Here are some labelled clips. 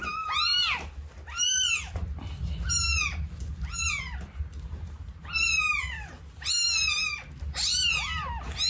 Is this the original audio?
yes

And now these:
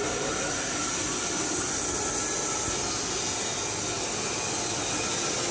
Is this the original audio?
yes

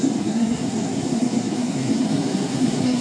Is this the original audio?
no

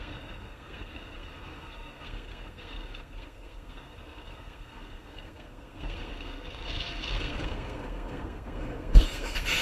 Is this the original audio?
no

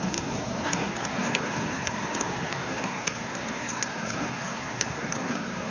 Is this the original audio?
no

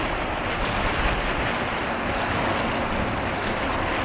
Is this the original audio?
yes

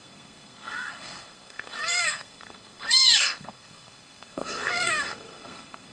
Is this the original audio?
no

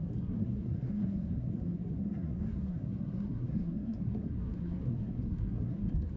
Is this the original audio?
no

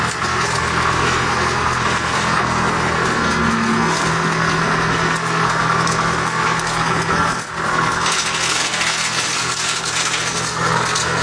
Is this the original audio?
no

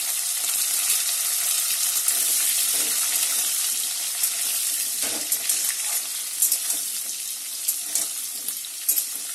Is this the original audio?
yes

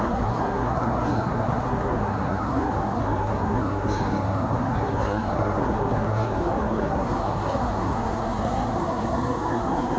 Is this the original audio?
no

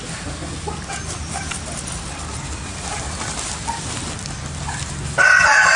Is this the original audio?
yes